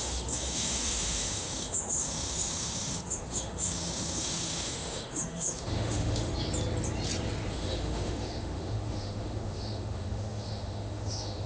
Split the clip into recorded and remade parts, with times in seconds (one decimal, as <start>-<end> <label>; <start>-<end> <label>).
0.0-6.3 remade; 6.3-7.5 recorded; 7.5-11.5 remade